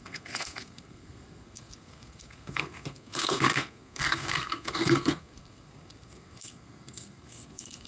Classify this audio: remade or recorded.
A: remade